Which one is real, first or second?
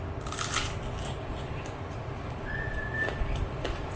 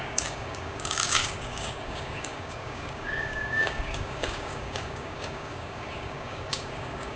first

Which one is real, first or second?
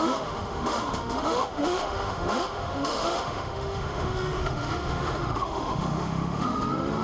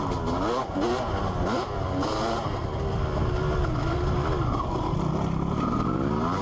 second